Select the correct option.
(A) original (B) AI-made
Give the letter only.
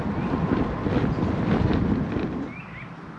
A